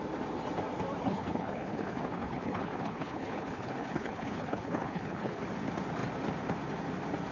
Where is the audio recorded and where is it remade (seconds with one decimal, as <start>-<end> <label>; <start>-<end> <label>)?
0.0-1.0 recorded; 1.0-5.4 remade; 5.4-7.3 recorded